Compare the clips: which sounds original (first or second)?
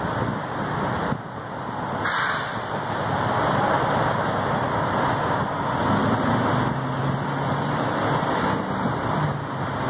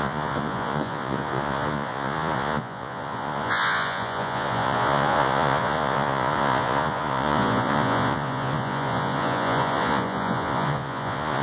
first